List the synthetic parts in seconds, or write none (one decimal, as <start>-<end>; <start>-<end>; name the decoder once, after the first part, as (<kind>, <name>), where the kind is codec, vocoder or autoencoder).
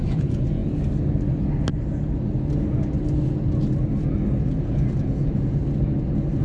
0.0-0.6 (vocoder, Vocos); 4.4-5.6